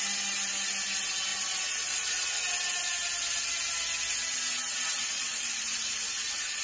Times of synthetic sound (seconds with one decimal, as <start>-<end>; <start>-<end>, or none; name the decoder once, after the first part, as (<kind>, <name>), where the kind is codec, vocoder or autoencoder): 1.3-2.4 (vocoder, Vocos); 5.0-6.6